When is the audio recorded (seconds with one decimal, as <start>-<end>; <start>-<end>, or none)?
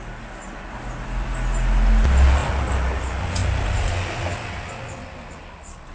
0.0-5.9